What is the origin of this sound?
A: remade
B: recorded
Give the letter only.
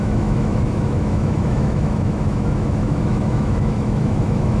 A